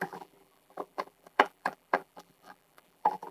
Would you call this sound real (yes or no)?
no